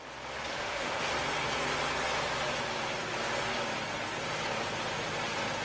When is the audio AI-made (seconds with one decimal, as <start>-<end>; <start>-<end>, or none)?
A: 0.5-1.1